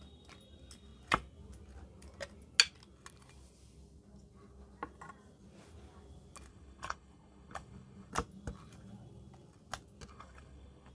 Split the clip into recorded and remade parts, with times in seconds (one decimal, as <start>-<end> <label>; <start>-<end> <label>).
0.0-6.5 recorded; 6.5-8.1 remade; 8.1-10.1 recorded; 10.1-10.9 remade